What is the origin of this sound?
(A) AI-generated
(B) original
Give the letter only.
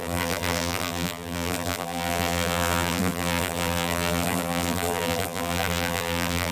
A